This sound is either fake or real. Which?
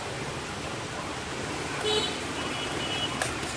real